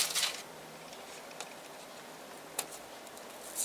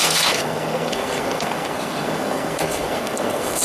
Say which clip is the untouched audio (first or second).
first